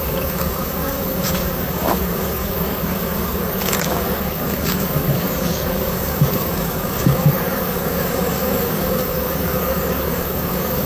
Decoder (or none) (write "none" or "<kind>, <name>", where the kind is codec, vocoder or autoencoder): codec, DAC